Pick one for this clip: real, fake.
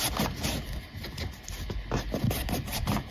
real